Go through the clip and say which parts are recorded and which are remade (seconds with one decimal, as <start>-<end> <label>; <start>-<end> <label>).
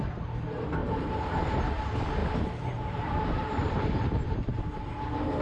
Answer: 0.0-0.8 recorded; 0.8-1.4 remade; 1.4-2.2 recorded; 2.2-4.6 remade; 4.6-5.4 recorded